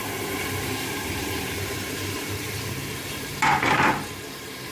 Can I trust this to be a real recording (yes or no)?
no